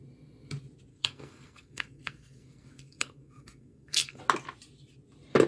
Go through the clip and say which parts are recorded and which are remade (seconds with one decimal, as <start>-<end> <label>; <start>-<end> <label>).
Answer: 0.0-0.9 recorded; 0.9-4.2 remade; 4.2-5.5 recorded